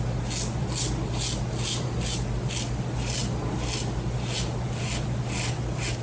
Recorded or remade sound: recorded